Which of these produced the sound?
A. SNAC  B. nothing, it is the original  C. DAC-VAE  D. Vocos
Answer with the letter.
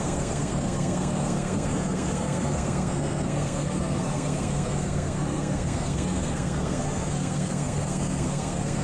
A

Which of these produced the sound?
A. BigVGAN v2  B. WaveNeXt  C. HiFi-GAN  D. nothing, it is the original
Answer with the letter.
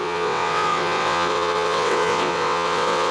B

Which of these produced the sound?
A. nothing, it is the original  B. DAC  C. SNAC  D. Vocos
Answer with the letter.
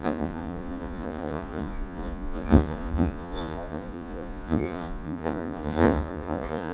D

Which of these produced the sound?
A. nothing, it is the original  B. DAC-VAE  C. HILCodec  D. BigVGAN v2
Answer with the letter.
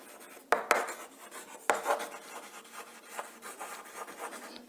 A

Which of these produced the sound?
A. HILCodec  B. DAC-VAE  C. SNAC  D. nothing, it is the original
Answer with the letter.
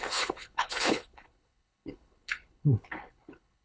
A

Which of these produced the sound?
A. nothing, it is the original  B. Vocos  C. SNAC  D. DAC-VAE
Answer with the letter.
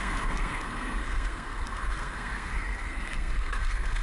C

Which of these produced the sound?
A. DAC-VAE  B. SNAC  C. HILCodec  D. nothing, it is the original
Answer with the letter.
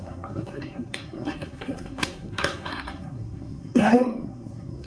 B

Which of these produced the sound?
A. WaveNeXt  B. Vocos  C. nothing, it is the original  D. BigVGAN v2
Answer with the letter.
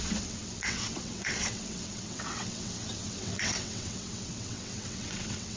A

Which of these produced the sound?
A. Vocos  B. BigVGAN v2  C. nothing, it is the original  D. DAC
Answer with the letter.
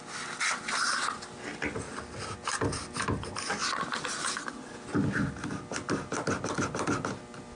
C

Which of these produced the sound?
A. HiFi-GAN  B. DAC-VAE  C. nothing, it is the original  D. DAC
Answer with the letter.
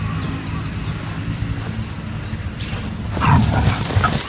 C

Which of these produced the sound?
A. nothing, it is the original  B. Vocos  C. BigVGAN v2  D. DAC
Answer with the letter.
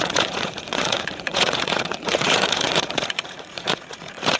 B